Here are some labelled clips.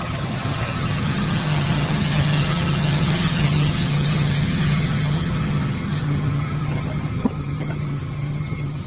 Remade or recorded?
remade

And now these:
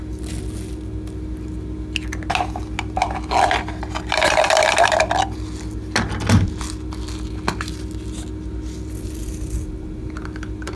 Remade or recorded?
recorded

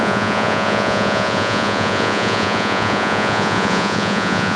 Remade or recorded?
remade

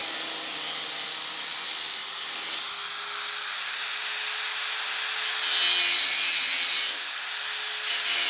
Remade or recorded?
recorded